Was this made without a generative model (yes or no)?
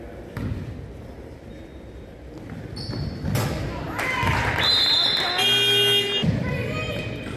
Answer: yes